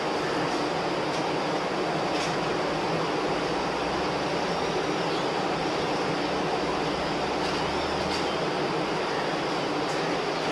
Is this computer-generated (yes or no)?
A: no